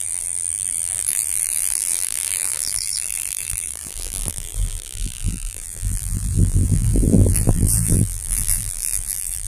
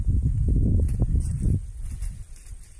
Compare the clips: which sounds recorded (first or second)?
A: second